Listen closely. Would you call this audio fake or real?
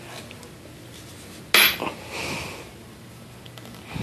real